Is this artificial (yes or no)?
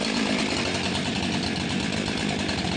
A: no